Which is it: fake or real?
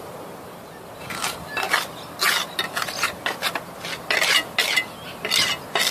real